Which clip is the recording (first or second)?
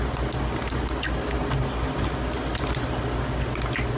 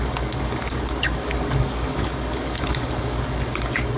first